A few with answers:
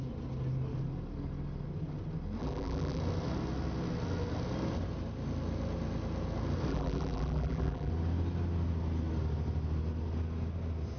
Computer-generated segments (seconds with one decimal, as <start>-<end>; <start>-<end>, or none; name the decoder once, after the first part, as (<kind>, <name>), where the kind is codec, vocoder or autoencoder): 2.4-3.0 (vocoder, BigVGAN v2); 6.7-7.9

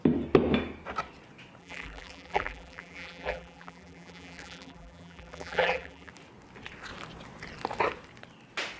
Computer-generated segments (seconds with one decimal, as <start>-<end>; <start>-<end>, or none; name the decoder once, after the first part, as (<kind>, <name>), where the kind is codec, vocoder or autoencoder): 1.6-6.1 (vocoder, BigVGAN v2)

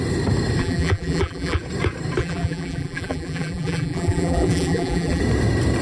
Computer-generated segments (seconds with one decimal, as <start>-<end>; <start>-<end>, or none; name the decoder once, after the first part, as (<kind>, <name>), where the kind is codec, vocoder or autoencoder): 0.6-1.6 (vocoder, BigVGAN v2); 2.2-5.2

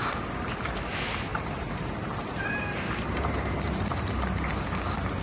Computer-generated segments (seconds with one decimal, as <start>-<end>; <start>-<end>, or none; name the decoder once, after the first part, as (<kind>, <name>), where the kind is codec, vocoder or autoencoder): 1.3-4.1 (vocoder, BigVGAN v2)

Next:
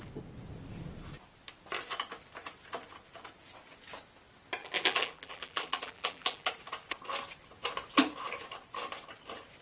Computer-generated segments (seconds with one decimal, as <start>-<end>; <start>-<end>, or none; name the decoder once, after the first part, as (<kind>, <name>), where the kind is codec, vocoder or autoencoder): 4.6-6.5 (vocoder, BigVGAN v2)

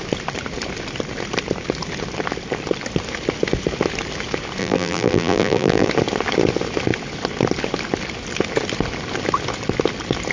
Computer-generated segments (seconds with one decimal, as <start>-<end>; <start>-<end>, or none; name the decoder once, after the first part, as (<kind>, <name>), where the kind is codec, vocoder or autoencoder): 4.6-5.9 (vocoder, BigVGAN v2)

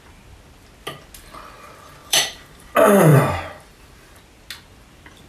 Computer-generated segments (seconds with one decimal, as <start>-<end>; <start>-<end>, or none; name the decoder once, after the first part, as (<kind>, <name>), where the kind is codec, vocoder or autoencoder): 2.0-2.7 (vocoder, BigVGAN v2); 3.1-3.8